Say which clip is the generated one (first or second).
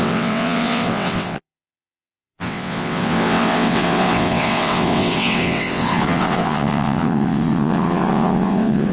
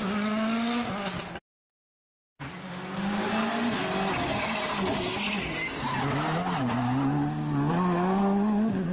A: first